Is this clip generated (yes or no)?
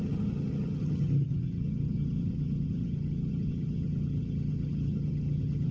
yes